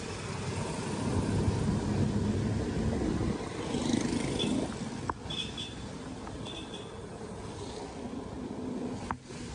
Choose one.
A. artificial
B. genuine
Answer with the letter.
B